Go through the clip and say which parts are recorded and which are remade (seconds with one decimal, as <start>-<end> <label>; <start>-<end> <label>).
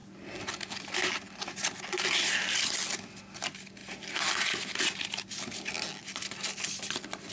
0.0-7.3 recorded